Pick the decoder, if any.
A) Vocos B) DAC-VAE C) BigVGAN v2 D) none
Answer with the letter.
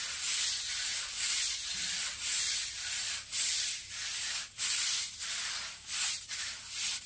D